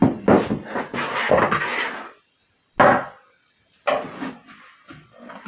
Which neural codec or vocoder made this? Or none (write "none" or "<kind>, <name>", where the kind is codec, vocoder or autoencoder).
none